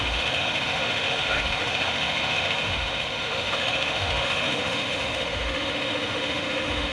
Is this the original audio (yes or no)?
no